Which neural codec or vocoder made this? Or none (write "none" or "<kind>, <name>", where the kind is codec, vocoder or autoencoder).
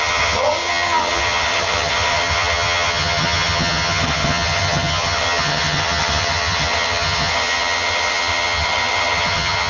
vocoder, HiFi-GAN